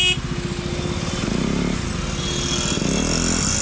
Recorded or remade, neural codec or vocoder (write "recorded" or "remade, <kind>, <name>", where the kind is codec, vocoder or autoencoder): recorded